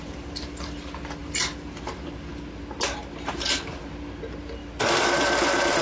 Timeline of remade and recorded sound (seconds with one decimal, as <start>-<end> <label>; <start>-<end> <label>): 0.0-4.6 recorded; 4.6-5.8 remade